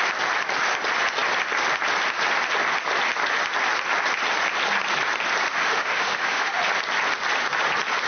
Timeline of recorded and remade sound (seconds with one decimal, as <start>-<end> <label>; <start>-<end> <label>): 0.0-5.5 recorded; 5.5-6.6 remade; 6.6-8.1 recorded